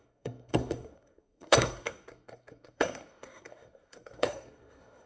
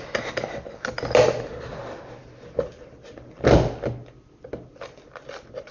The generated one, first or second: first